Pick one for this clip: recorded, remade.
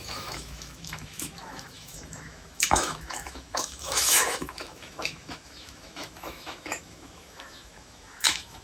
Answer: remade